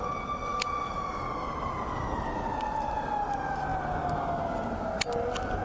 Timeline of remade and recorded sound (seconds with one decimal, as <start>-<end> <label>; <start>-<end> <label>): 0.0-5.6 recorded